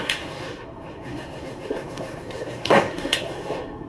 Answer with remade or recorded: remade